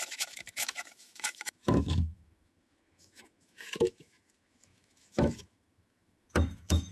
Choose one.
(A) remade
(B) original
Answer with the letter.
A